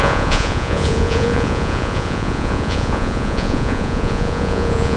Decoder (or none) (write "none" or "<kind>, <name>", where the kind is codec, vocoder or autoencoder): vocoder, Vocos